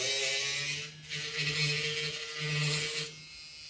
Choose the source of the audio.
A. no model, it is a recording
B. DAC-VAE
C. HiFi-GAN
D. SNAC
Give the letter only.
A